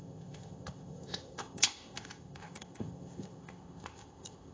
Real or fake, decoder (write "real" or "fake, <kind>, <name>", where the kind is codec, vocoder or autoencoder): fake, codec, ZipCodec